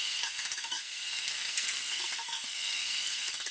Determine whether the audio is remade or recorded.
remade